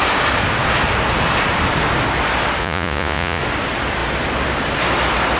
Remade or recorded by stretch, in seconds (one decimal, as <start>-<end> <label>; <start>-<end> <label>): 0.0-2.6 recorded; 2.6-3.4 remade; 3.4-5.4 recorded